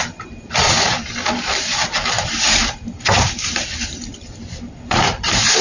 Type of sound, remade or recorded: remade